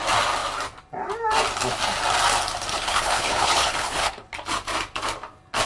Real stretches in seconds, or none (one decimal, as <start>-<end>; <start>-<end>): 0.0-2.7; 4.3-5.7